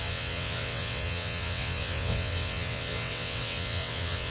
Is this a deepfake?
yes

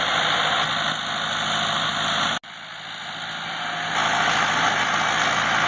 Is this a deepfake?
no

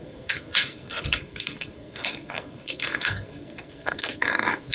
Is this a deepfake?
yes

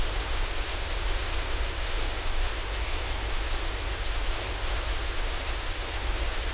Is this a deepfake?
yes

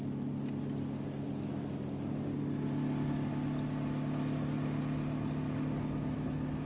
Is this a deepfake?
no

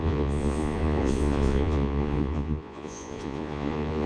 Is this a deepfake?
yes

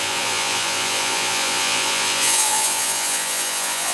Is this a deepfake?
yes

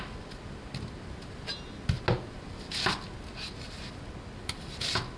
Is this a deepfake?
no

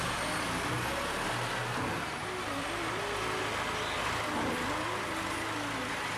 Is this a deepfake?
no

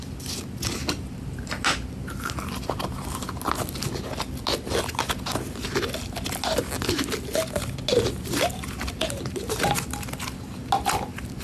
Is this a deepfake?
no